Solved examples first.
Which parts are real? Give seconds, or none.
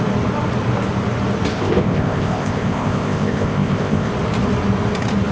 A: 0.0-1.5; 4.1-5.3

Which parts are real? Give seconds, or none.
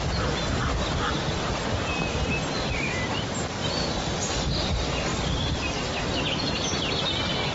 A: 0.0-5.1; 5.7-7.5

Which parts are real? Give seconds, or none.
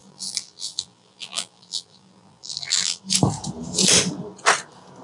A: 3.0-5.0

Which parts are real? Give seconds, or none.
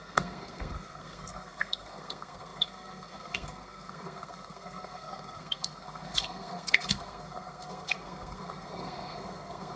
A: none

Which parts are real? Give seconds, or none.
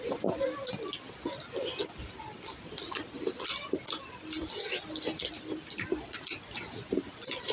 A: 0.0-7.5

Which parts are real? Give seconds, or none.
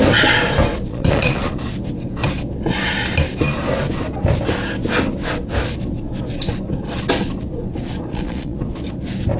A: 0.0-0.9; 1.6-8.1; 8.6-9.4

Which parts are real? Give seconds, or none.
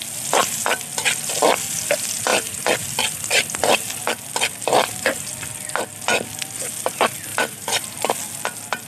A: 0.0-7.3; 8.1-8.9